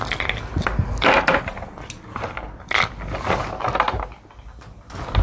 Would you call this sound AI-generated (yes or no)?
no